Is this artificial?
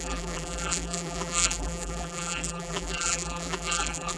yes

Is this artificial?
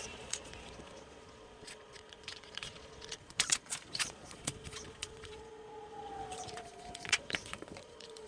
yes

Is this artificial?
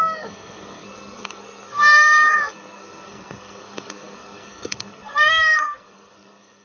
yes